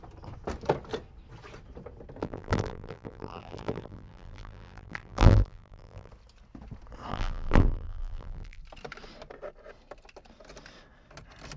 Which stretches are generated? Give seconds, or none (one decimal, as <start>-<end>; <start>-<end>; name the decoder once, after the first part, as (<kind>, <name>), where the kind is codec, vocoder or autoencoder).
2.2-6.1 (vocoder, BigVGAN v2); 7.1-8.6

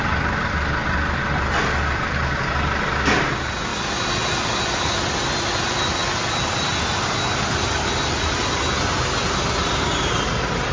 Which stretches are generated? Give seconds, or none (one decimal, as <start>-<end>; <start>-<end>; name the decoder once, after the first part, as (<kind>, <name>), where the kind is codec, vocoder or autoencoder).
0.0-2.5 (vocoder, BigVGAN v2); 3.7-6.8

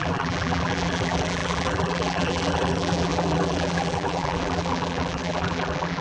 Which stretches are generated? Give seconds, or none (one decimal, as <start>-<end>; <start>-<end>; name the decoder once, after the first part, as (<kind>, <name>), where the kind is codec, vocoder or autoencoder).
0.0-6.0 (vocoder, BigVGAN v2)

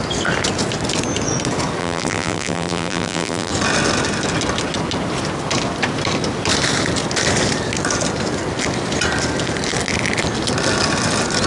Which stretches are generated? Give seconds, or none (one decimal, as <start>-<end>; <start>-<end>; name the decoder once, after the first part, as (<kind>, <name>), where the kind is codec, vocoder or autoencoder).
1.8-3.5 (vocoder, BigVGAN v2)

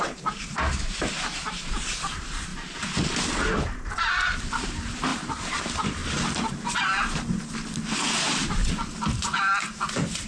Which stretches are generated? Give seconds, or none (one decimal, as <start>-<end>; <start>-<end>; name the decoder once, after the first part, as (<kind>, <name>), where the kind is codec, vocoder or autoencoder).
0.0-2.5 (vocoder, BigVGAN v2); 4.4-6.0; 8.1-8.6

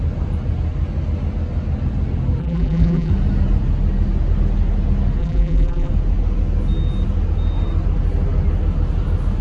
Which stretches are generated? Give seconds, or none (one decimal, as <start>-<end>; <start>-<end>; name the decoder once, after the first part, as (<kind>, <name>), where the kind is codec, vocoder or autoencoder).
2.4-3.1 (vocoder, BigVGAN v2); 5.2-5.9